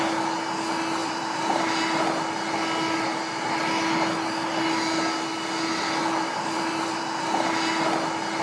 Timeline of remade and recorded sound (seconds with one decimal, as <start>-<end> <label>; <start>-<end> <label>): 0.0-1.0 recorded; 1.0-1.6 remade; 1.6-6.0 recorded; 6.0-7.0 remade; 7.0-8.4 recorded